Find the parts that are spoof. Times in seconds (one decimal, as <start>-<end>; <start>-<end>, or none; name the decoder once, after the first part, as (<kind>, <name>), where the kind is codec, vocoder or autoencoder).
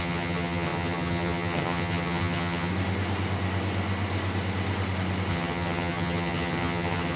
0.0-2.7 (vocoder, HiFi-GAN); 5.3-7.2